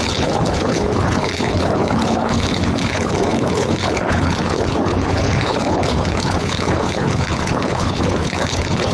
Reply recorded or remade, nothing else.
remade